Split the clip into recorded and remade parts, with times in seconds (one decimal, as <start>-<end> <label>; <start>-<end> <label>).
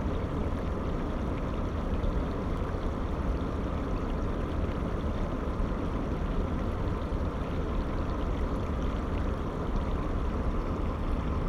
0.0-11.5 recorded